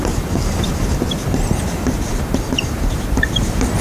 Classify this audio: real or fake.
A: fake